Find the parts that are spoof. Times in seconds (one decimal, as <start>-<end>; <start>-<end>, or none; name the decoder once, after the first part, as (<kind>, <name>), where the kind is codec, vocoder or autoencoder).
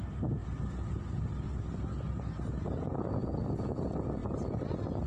4.2-5.1 (vocoder, BigVGAN v2)